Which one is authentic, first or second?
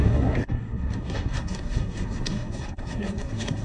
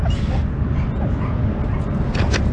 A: second